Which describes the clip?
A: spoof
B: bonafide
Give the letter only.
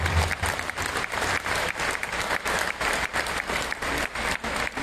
A